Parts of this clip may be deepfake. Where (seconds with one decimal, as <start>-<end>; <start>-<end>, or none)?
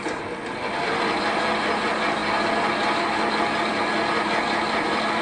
none